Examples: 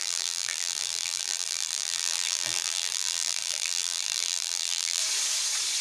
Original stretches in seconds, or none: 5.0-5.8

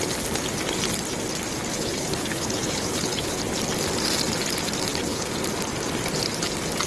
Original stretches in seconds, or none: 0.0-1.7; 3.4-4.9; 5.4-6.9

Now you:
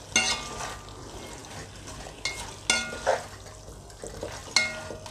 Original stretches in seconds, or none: 0.0-5.1

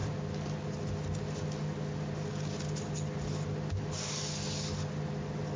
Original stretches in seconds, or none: 0.0-5.6